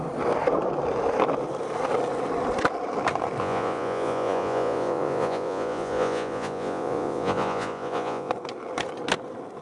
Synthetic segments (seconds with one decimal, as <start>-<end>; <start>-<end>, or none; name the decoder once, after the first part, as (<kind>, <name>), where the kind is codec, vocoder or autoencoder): 3.4-8.3 (vocoder, Vocos)